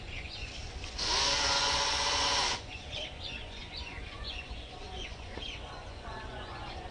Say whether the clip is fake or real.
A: fake